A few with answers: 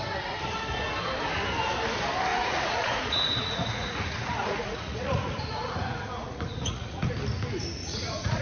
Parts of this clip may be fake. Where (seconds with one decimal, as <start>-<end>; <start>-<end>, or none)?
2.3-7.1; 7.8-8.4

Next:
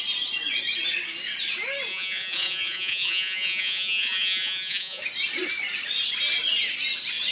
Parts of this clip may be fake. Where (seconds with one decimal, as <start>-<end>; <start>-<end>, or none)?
1.9-5.0

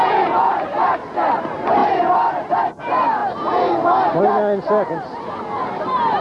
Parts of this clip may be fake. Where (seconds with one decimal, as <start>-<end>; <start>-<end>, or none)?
0.0-0.5

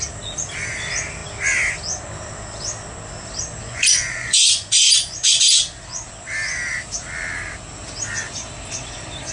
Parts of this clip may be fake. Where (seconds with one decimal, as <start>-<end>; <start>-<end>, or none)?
3.6-5.4